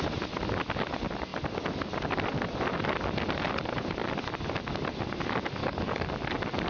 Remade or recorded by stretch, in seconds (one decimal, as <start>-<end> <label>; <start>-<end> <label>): 0.0-5.6 recorded; 5.6-6.1 remade; 6.1-6.7 recorded